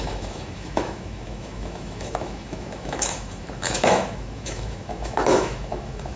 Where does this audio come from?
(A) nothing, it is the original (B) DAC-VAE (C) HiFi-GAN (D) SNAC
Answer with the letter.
B